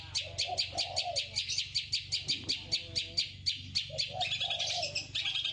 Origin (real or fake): real